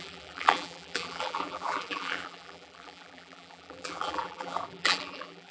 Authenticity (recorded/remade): remade